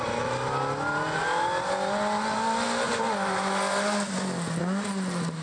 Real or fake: real